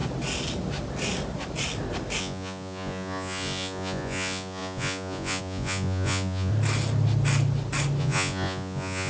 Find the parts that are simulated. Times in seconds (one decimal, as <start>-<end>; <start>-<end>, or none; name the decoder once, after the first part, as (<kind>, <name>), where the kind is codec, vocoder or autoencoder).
2.2-6.5 (vocoder, Vocos); 8.0-9.1